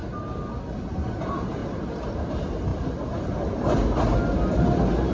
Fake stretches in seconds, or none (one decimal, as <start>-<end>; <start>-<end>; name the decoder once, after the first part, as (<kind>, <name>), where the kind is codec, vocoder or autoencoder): none